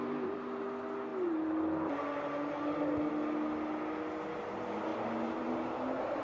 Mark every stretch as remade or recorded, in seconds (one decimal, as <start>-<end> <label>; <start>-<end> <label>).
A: 0.0-6.2 recorded